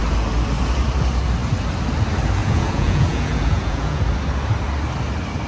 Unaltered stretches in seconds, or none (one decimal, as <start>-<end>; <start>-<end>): 0.0-2.4; 4.0-5.5